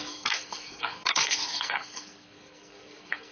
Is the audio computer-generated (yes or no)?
yes